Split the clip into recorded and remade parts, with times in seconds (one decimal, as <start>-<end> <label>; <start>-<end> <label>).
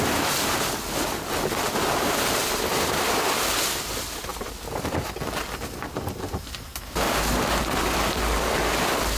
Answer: 0.0-2.4 recorded; 2.4-3.1 remade; 3.1-4.3 recorded; 4.3-5.0 remade; 5.0-6.7 recorded; 6.7-9.2 remade